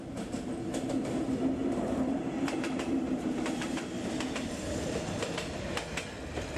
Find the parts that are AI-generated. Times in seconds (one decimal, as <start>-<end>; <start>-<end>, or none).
1.6-3.8